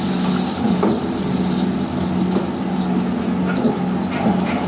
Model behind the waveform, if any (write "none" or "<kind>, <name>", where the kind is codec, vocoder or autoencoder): none